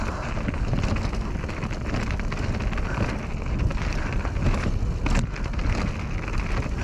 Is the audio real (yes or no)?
yes